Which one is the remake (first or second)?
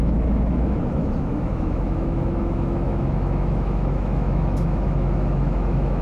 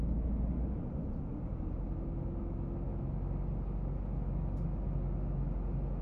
first